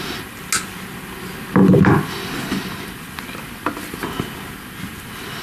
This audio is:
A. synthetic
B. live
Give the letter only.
B